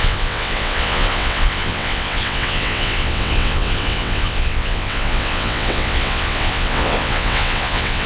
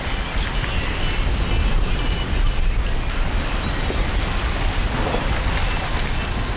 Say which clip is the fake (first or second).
first